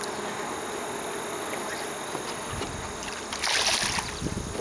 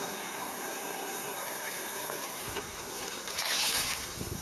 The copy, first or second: second